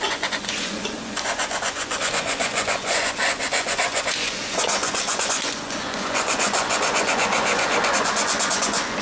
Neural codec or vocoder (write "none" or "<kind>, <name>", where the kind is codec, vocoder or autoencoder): vocoder, Vocos